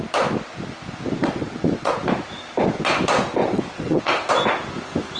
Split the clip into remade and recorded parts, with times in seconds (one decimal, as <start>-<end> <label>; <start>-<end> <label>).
0.0-1.2 recorded; 1.2-2.0 remade; 2.0-3.4 recorded; 3.4-4.3 remade; 4.3-5.2 recorded